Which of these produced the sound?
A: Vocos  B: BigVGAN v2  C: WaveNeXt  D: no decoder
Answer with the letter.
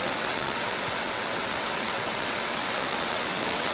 C